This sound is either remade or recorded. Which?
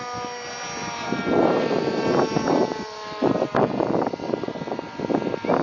recorded